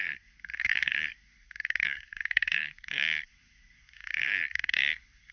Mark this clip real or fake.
fake